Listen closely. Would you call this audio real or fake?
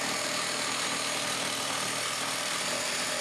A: real